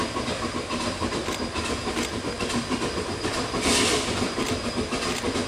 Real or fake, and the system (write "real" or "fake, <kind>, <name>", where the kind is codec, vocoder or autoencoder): real